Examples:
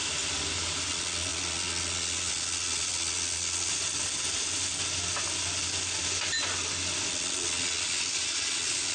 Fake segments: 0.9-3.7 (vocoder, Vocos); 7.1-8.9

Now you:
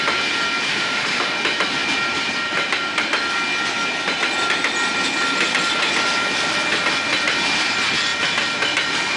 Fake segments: 0.7-1.3 (autoencoder, DAC-VAE)

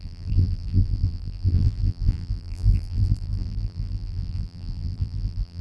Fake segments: 0.0-5.6 (vocoder, BigVGAN v2)

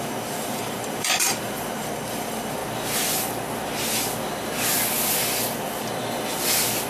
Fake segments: 0.0-2.6 (vocoder, BigVGAN v2)